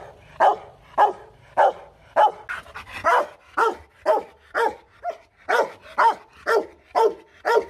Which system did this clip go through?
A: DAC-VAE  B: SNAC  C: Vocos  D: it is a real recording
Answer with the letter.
D